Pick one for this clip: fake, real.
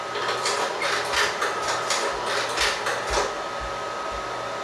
real